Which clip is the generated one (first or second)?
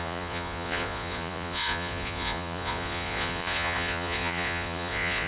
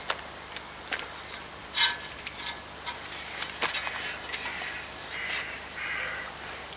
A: first